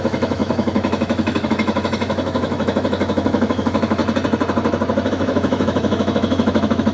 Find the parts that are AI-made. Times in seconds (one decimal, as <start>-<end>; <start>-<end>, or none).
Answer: 0.0-4.0; 5.1-6.9